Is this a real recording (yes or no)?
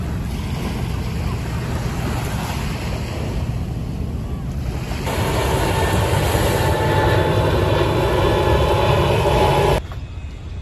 yes